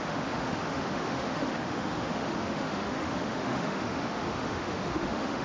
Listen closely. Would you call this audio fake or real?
fake